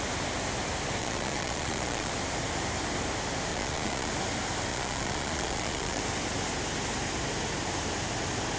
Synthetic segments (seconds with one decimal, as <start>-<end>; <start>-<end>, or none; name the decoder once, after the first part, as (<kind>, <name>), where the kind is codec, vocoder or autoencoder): 1.0-2.1 (vocoder, Vocos); 3.5-4.1; 4.7-6.0